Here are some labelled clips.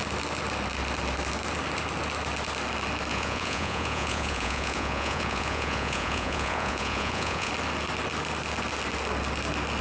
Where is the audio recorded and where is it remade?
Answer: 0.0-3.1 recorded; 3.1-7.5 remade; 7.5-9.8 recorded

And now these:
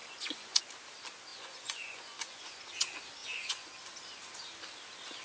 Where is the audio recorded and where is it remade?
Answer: 0.0-0.6 remade; 0.6-1.3 recorded; 1.3-2.6 remade; 2.6-3.2 recorded; 3.2-3.7 remade; 3.7-5.2 recorded

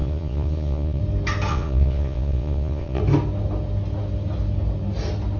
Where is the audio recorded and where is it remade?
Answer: 0.0-1.0 remade; 1.0-1.5 recorded; 1.5-3.0 remade; 3.0-5.4 recorded